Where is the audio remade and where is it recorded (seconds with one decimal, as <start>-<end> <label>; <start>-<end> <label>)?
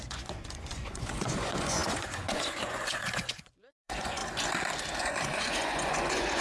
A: 0.0-4.2 remade; 4.2-5.0 recorded; 5.0-6.4 remade